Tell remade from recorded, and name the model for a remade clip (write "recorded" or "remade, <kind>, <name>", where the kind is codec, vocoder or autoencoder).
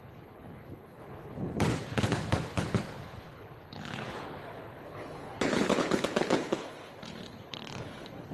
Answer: remade, codec, HILCodec